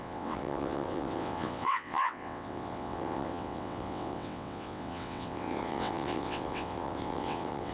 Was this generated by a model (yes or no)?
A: yes